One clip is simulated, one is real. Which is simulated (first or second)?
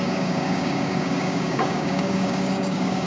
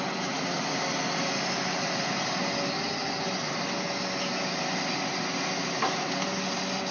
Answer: first